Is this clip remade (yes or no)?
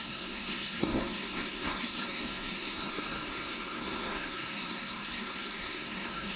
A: yes